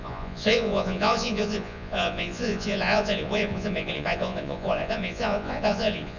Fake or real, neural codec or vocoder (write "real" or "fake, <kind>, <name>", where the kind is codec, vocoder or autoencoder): fake, vocoder, Vocos